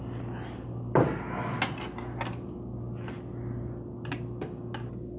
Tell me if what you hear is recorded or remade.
recorded